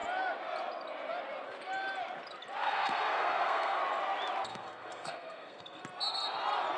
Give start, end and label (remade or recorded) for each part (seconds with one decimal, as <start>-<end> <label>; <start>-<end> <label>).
0.0-2.6 recorded; 2.6-3.8 remade; 3.8-4.5 recorded; 4.5-5.8 remade; 5.8-6.8 recorded